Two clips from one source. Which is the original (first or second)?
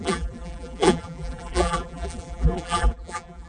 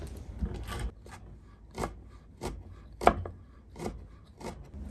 second